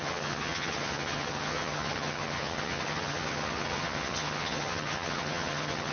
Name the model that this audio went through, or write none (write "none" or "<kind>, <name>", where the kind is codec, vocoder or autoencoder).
vocoder, HiFi-GAN